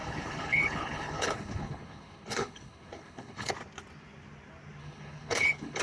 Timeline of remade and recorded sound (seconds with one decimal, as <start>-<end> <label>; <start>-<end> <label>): 0.0-3.5 remade; 3.5-4.8 recorded; 4.8-5.8 remade